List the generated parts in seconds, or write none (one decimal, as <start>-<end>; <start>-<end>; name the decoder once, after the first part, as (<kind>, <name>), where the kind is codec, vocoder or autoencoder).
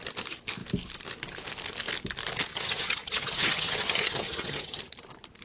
2.5-4.8 (vocoder, HiFi-GAN)